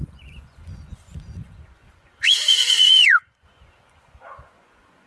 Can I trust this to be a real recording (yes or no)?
no